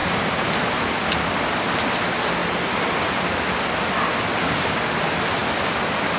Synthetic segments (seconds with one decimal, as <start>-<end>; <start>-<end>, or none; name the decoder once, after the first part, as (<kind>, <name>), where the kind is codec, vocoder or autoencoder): none